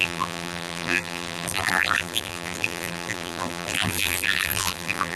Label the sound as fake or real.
fake